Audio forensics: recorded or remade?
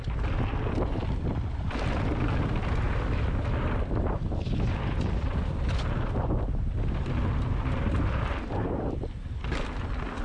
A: recorded